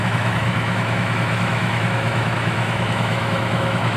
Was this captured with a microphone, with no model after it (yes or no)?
no